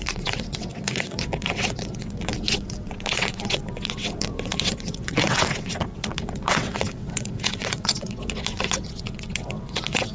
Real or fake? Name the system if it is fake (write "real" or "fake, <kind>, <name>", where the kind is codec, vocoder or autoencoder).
fake, vocoder, WaveNeXt